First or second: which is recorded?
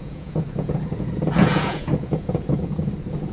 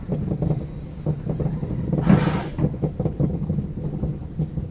second